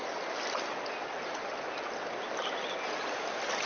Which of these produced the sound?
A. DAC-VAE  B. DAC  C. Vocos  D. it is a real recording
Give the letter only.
D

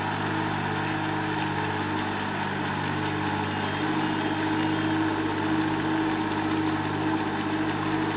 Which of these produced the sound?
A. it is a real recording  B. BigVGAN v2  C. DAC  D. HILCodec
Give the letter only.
A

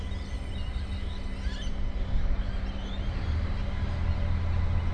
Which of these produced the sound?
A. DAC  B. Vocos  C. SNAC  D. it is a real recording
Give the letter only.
D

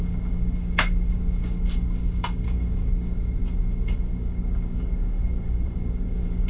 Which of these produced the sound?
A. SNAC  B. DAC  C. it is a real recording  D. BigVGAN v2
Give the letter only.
B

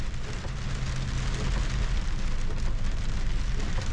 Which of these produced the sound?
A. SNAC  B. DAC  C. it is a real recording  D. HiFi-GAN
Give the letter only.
C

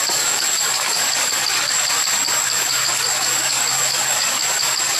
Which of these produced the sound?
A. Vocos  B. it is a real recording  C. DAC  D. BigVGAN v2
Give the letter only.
C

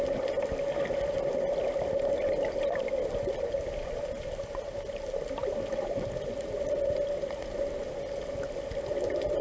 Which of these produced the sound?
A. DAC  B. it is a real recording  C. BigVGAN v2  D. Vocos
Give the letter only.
B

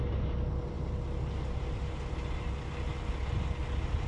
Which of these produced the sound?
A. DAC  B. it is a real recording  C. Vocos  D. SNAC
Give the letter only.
B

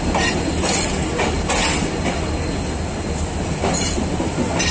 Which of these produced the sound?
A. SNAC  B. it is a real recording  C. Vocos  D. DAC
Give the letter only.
B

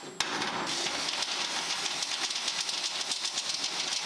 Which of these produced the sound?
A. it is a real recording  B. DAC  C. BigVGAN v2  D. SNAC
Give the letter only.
A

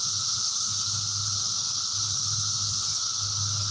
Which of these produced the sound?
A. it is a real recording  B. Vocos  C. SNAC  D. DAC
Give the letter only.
A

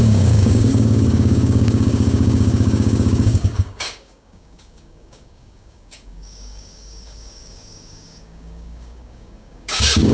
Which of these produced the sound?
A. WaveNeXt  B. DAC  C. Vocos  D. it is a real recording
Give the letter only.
B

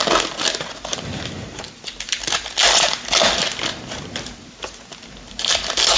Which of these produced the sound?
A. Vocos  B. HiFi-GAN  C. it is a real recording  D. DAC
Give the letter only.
C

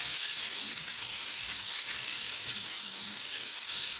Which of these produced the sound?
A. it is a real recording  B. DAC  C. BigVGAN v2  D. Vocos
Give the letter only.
B